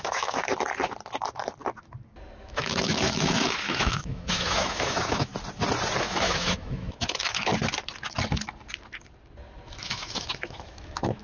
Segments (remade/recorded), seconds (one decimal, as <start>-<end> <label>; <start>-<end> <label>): 0.0-0.5 remade; 0.5-2.4 recorded; 2.4-5.3 remade; 5.3-6.0 recorded; 6.0-7.5 remade; 7.5-9.8 recorded; 9.8-11.2 remade